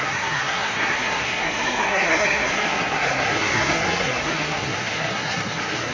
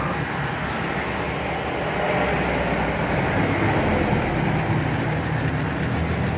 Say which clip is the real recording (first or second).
second